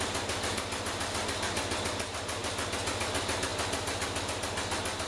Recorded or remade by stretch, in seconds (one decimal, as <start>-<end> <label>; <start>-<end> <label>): 0.0-5.1 recorded